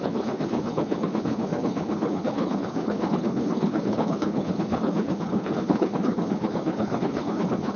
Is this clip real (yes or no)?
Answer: no